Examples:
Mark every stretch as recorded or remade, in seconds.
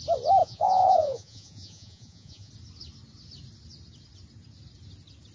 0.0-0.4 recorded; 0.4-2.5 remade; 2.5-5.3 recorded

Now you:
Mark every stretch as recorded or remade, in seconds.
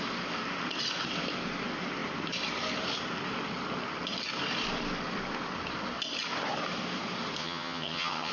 0.0-7.4 recorded; 7.4-8.3 remade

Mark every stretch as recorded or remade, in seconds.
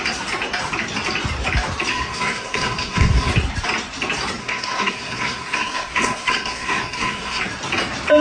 0.0-1.9 recorded; 1.9-3.3 remade; 3.3-4.4 recorded; 4.4-7.4 remade; 7.4-8.2 recorded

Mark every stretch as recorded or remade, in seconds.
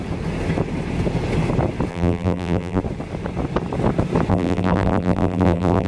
0.0-1.9 recorded; 1.9-2.8 remade; 2.8-4.3 recorded; 4.3-5.9 remade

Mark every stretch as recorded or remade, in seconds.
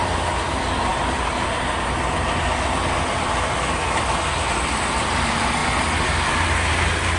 0.0-0.9 remade; 0.9-5.0 recorded; 5.0-5.6 remade; 5.6-6.7 recorded; 6.7-7.2 remade